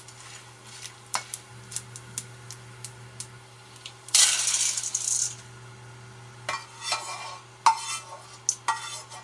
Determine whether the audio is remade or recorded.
recorded